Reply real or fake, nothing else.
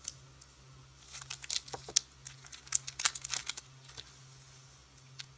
real